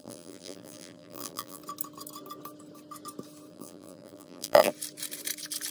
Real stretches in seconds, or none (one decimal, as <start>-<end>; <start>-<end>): 1.6-3.5; 4.7-5.7